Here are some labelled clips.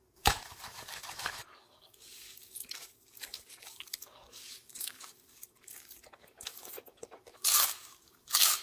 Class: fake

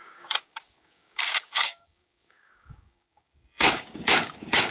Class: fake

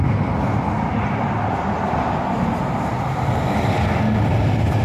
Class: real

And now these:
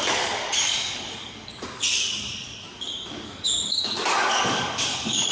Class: fake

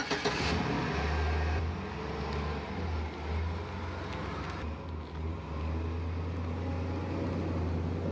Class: real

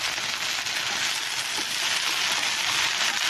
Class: real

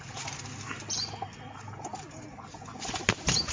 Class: real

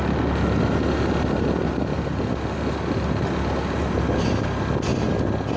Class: real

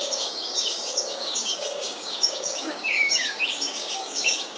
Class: fake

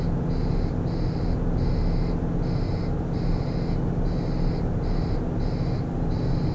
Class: real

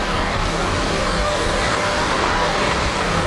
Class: fake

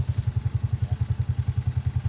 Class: real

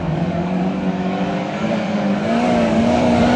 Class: fake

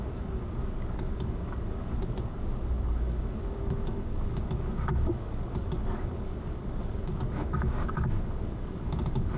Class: fake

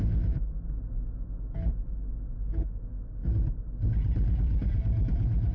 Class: real